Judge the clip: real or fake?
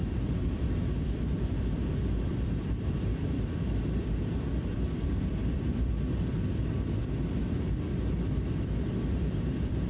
fake